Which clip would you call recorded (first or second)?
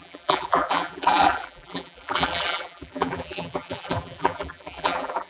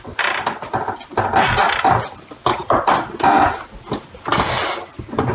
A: second